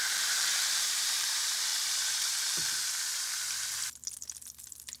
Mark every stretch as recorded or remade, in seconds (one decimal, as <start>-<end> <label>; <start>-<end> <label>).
0.0-1.7 remade; 1.7-5.0 recorded